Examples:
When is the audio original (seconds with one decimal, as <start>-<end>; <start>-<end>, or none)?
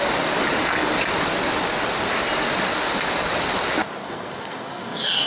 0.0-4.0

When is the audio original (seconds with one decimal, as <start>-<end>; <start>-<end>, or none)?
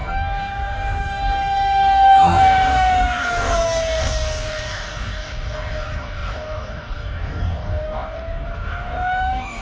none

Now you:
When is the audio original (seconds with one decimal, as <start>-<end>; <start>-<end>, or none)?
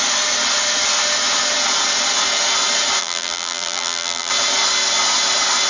0.0-3.0; 4.3-5.7